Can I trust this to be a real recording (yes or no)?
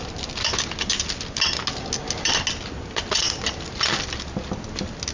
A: yes